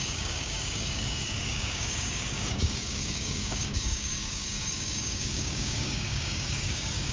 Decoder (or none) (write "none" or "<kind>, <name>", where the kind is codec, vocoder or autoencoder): codec, DAC